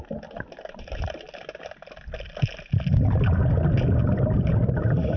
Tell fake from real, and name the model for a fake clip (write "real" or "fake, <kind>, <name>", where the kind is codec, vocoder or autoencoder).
real